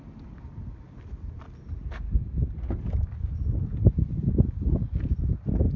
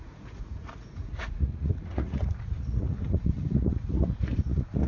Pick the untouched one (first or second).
first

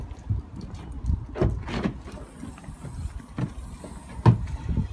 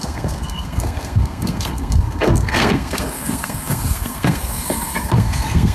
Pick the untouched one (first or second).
first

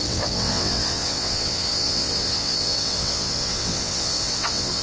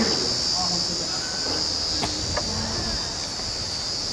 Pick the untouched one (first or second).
second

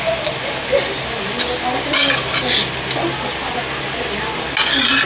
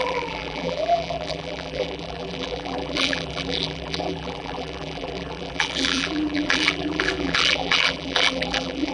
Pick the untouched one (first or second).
first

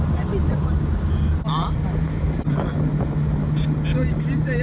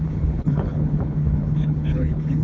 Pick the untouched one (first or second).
first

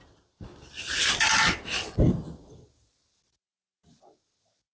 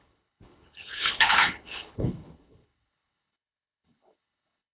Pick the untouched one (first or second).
first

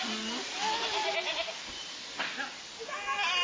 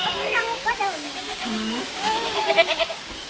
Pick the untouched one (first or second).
first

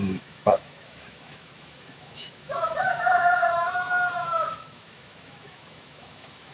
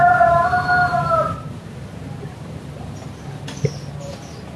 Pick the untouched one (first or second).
second